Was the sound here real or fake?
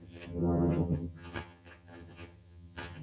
fake